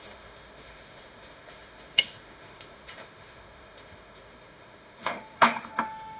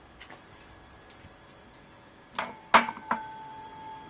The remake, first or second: first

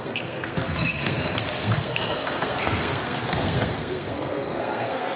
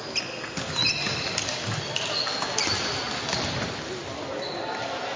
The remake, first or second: first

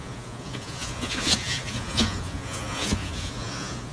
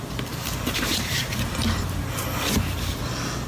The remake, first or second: first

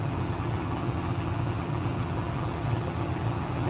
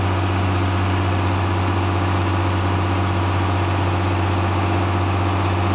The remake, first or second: first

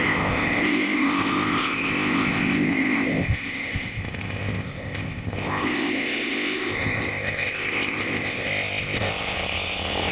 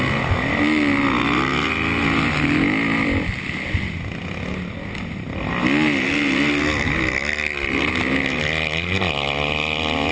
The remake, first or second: first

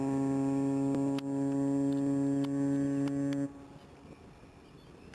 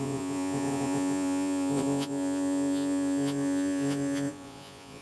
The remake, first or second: second